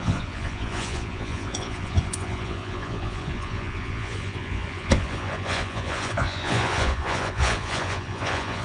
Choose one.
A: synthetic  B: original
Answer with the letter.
A